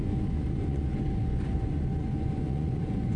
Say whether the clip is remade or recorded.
remade